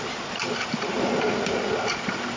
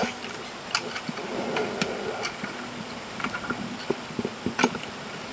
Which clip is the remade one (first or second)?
first